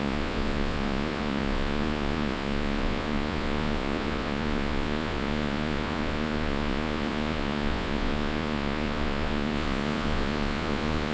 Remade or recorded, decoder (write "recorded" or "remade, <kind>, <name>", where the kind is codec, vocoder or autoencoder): remade, vocoder, Vocos